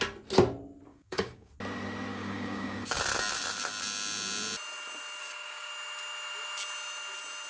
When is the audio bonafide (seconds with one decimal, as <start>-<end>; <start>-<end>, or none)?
0.0-0.9; 1.5-2.1; 3.0-5.2; 5.7-7.5